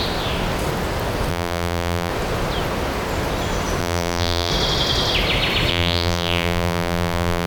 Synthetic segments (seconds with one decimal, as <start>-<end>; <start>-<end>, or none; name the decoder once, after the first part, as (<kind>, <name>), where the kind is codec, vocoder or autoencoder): 1.3-2.1 (vocoder, BigVGAN v2); 3.8-4.5; 5.7-7.5